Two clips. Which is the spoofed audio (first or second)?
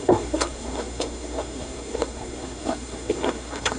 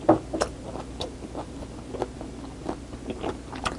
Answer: first